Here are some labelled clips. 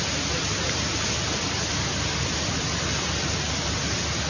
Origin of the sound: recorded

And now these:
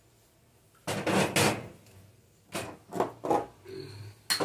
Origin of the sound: recorded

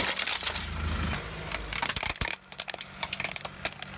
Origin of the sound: recorded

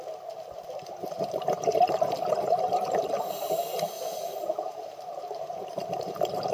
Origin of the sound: remade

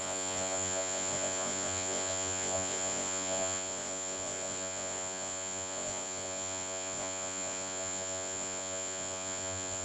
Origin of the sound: remade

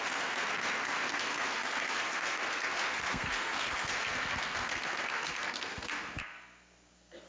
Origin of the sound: remade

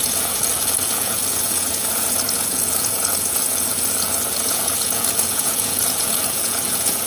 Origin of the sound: remade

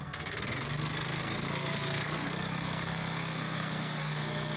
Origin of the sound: remade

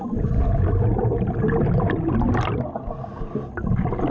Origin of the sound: recorded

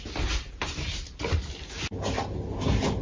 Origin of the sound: recorded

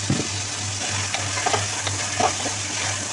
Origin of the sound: recorded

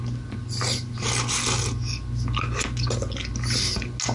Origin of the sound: recorded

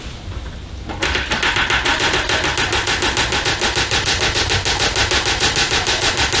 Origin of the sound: recorded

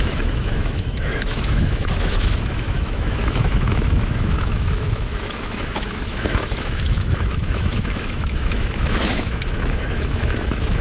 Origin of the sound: remade